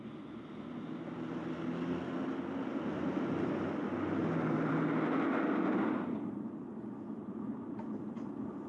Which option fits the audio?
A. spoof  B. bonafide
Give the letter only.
B